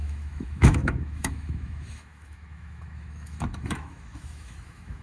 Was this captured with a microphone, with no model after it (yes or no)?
no